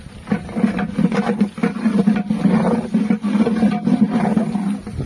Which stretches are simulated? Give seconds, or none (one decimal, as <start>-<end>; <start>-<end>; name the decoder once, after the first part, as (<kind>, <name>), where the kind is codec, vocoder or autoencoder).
none